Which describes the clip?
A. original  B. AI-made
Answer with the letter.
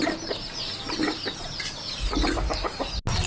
A